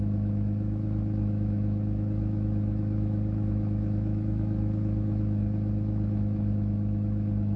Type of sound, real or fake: fake